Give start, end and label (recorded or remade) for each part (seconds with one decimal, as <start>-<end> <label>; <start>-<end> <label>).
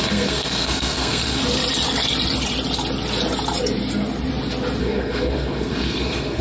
0.0-1.4 remade; 1.4-4.8 recorded; 4.8-6.4 remade